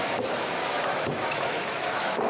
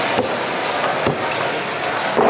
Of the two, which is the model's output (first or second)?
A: first